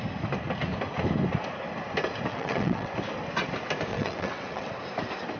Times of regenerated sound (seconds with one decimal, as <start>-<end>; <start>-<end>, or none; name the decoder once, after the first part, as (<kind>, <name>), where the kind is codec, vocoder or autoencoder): 2.3-2.9 (vocoder, WaveNeXt); 3.9-4.7